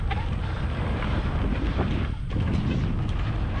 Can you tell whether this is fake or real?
real